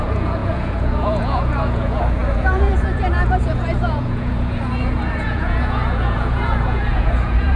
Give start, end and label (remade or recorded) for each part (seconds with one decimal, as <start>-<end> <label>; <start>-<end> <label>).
0.0-7.6 remade